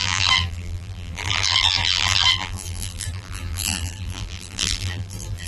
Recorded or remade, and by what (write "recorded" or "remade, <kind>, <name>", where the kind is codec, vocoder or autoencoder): remade, vocoder, BigVGAN v2